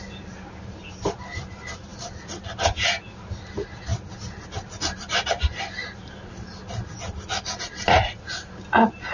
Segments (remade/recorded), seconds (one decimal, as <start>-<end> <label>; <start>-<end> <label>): 0.0-9.1 recorded